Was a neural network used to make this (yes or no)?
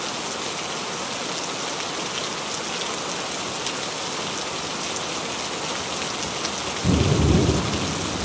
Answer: no